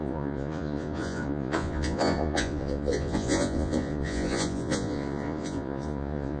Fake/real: fake